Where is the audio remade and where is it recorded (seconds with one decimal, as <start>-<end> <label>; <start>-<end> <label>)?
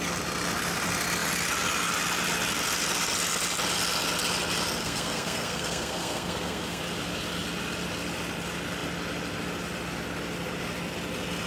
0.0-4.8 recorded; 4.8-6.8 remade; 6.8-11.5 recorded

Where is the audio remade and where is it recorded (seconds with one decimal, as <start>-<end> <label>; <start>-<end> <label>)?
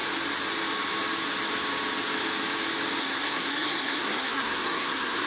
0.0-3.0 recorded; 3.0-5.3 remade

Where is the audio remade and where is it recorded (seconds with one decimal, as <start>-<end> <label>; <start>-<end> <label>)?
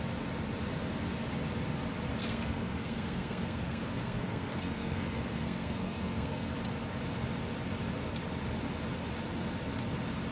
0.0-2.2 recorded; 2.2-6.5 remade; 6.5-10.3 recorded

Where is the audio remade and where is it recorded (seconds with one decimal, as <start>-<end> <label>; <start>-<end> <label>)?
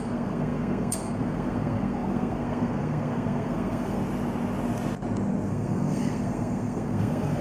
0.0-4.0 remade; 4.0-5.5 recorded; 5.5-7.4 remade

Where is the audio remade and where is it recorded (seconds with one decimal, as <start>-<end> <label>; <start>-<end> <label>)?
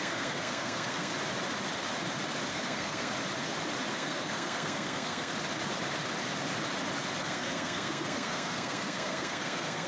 0.0-1.1 remade; 1.1-2.5 recorded; 2.5-3.1 remade; 3.1-3.9 recorded; 3.9-5.3 remade; 5.3-7.2 recorded; 7.2-9.9 remade